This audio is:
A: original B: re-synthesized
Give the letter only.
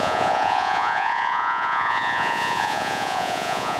B